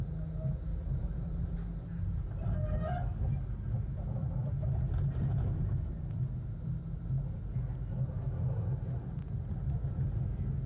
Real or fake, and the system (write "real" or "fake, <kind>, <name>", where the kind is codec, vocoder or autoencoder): real